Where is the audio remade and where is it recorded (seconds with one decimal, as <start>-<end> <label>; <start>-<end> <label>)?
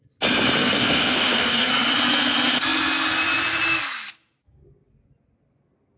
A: 0.0-0.6 recorded; 0.6-1.7 remade; 1.7-6.0 recorded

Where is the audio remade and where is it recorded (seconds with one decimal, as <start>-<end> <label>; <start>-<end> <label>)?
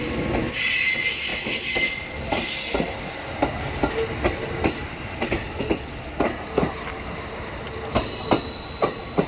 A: 0.0-9.3 recorded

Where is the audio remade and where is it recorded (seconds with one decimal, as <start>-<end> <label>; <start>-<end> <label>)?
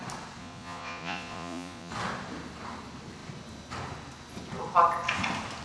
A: 0.0-0.4 recorded; 0.4-1.9 remade; 1.9-5.6 recorded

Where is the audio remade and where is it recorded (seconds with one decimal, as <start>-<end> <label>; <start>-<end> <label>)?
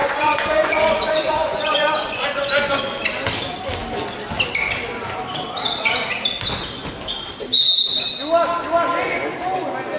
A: 0.0-2.8 remade; 2.8-10.0 recorded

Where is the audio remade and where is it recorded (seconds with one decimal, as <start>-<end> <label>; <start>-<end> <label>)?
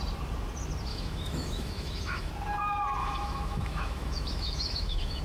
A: 0.0-0.9 recorded; 0.9-2.3 remade; 2.3-3.0 recorded; 3.0-5.2 remade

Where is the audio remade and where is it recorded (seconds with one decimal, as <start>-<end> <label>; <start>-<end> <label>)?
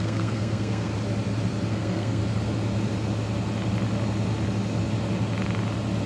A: 0.0-0.9 remade; 0.9-1.7 recorded; 1.7-2.2 remade; 2.2-6.1 recorded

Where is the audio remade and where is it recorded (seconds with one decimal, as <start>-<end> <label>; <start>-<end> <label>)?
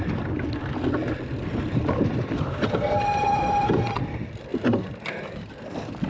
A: 0.0-6.1 remade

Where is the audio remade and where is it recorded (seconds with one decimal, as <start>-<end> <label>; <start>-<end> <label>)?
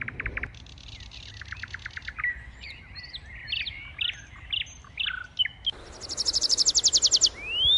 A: 0.0-2.3 recorded; 2.3-2.8 remade; 2.8-7.8 recorded